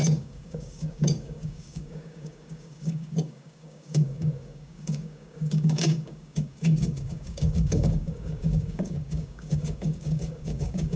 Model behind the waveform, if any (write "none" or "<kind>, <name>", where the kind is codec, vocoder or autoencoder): codec, DAC